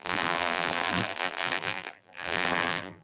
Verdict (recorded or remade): remade